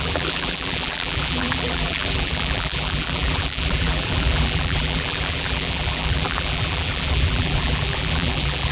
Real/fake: fake